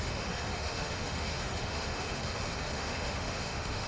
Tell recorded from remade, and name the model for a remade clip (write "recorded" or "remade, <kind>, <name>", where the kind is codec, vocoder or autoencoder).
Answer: remade, autoencoder, DAC-VAE